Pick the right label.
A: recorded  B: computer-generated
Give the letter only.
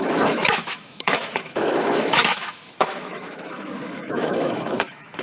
B